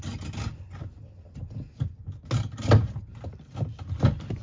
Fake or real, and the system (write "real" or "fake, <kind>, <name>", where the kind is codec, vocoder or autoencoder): real